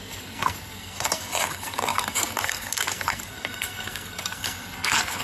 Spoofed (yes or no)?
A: yes